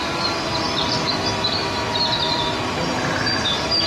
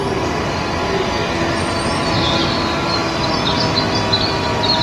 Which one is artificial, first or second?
first